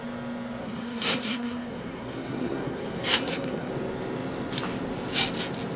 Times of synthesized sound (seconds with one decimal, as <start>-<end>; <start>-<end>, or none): 0.6-3.7